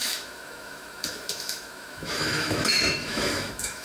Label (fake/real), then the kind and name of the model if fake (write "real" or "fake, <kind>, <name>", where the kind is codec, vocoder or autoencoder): fake, autoencoder, DAC-VAE